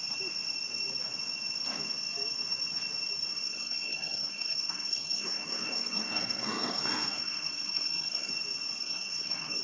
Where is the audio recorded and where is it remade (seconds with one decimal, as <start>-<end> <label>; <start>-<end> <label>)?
0.0-3.3 recorded; 3.3-8.3 remade; 8.3-8.8 recorded; 8.8-9.6 remade